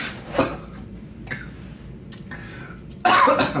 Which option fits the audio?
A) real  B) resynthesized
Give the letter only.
A